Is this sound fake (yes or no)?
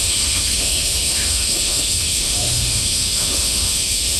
yes